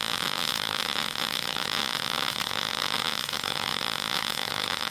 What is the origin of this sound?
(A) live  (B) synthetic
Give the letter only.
B